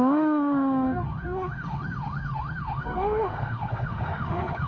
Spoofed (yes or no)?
yes